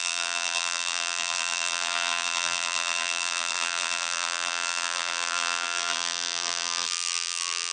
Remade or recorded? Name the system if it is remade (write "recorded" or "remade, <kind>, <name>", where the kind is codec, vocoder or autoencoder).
remade, vocoder, BigVGAN v2